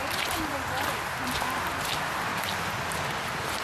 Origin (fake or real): real